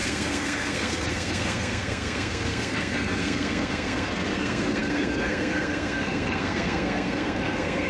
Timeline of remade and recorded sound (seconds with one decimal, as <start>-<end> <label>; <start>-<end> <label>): 0.0-7.9 remade